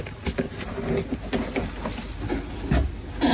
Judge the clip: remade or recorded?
recorded